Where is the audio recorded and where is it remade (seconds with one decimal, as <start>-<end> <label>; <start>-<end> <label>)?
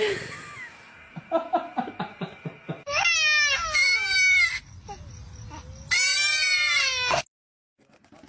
0.0-6.1 recorded; 6.1-6.7 remade; 6.7-8.3 recorded